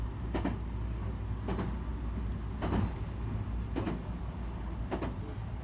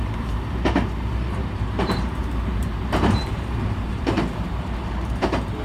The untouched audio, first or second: first